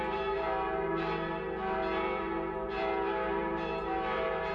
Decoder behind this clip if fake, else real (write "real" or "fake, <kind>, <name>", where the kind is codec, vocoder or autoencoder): real